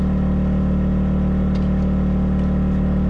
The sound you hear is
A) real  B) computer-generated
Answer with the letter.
A